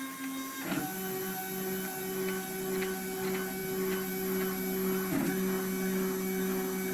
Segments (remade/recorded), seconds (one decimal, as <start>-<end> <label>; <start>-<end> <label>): 0.0-6.9 recorded